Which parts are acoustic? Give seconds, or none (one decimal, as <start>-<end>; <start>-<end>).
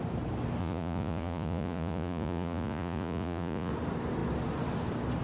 0.0-0.6; 3.7-5.2